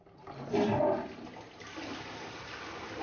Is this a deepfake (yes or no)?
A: no